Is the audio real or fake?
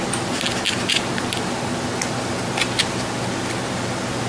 real